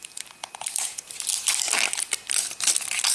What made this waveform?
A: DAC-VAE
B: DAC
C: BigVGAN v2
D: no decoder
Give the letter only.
C